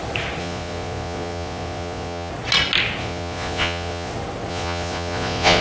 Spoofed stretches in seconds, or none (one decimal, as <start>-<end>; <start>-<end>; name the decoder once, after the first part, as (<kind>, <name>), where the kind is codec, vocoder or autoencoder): 0.4-2.3 (vocoder, Vocos); 3.0-4.1; 4.5-5.6